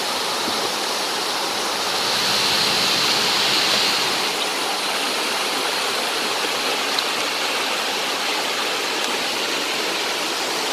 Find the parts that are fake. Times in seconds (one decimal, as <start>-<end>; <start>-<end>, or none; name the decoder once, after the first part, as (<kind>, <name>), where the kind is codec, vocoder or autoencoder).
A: 4.5-6.3 (vocoder, BigVGAN v2)